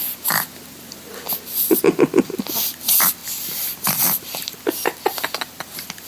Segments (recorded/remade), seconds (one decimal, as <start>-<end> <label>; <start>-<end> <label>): 0.0-3.2 recorded; 3.2-4.6 remade; 4.6-6.1 recorded